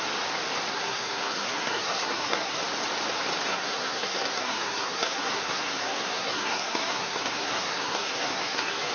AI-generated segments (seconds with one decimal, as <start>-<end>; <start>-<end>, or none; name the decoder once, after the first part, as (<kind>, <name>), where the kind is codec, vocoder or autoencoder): 0.7-2.6 (codec, SNAC); 3.5-8.9